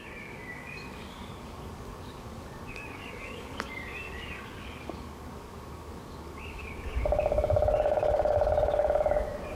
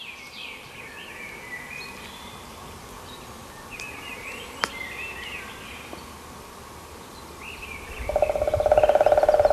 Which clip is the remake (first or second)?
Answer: first